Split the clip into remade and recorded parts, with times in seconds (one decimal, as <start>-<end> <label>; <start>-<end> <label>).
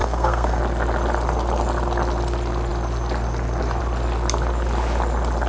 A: 0.0-0.6 remade; 0.6-5.5 recorded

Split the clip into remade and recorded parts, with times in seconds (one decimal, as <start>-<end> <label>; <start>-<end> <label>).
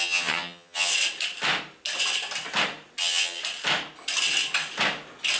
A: 0.0-0.9 remade; 0.9-3.0 recorded; 3.0-3.4 remade; 3.4-5.4 recorded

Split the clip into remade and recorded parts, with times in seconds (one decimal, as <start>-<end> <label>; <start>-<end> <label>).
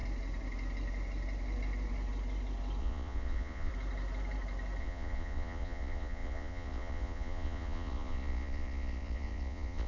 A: 0.0-2.8 recorded; 2.8-3.7 remade; 3.7-4.8 recorded; 4.8-9.9 remade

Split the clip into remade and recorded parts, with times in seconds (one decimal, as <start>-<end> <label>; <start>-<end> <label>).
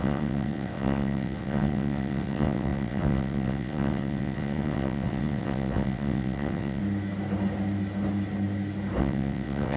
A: 0.0-6.8 remade; 6.8-9.0 recorded; 9.0-9.8 remade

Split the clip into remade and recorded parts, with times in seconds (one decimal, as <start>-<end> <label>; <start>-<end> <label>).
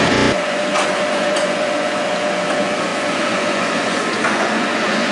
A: 0.0-5.1 remade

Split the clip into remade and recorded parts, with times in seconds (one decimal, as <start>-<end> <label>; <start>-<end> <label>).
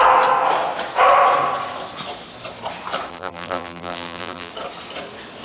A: 0.0-3.1 recorded; 3.1-4.5 remade; 4.5-5.4 recorded